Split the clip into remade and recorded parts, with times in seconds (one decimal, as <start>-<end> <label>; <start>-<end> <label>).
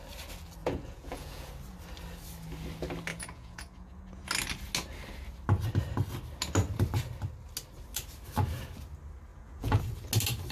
0.0-0.6 recorded; 0.6-1.5 remade; 1.5-3.1 recorded; 3.1-4.2 remade; 4.2-9.3 recorded; 9.3-9.8 remade; 9.8-10.5 recorded